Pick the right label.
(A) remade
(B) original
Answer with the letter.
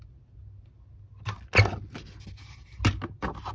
B